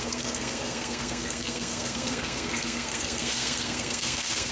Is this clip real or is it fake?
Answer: fake